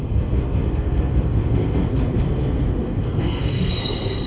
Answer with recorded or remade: remade